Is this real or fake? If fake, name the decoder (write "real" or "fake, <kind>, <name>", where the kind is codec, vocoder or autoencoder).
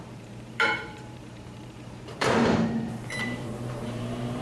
fake, vocoder, BigVGAN v2